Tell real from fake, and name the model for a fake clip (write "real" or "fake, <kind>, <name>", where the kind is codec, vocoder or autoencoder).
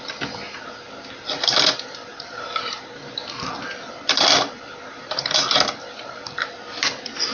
fake, vocoder, BigVGAN v2